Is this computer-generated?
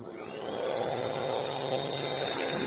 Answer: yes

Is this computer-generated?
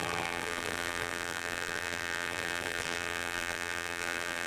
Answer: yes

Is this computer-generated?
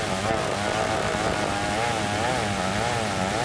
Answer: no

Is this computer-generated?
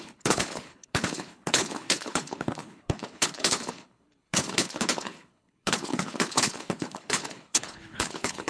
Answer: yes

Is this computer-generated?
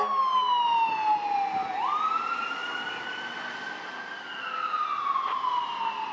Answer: no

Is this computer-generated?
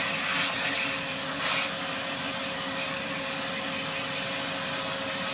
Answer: no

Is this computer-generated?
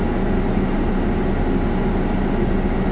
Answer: no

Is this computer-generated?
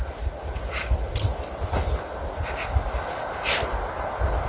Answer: no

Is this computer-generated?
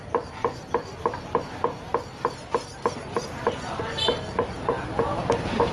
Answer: no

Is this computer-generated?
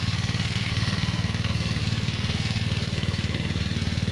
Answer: yes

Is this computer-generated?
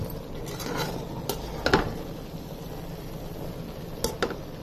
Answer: no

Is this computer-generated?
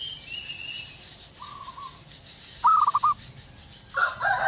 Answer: no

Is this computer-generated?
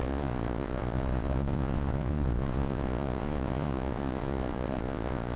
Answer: yes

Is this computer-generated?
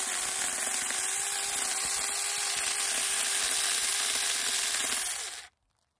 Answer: no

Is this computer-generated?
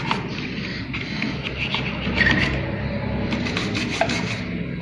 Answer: no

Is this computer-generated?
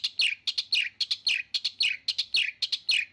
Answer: no